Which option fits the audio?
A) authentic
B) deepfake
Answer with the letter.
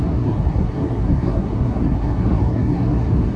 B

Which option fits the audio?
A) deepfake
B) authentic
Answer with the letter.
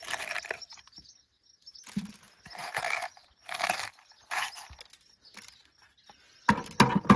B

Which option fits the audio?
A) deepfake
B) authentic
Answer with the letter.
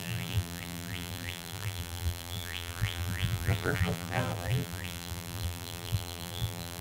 A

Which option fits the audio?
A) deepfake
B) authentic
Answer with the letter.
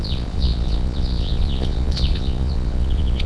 A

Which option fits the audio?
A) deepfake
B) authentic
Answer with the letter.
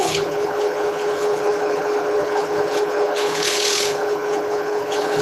A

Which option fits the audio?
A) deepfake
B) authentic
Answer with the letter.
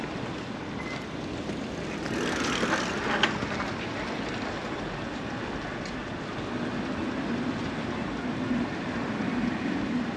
B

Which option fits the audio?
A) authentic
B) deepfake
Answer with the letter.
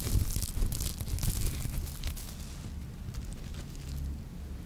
A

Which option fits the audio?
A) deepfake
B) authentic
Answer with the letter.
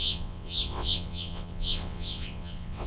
A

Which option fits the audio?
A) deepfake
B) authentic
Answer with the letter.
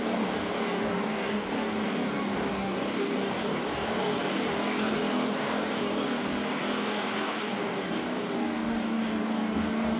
A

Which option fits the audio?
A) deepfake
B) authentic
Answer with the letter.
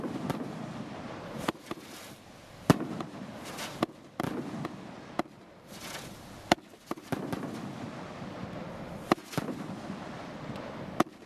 B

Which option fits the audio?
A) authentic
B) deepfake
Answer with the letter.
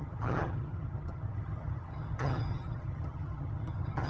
B